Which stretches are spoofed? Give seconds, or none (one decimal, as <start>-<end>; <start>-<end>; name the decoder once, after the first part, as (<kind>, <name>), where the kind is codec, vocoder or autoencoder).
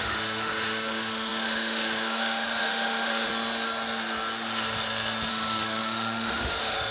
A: 0.0-3.3 (autoencoder, DAC-VAE); 5.3-6.9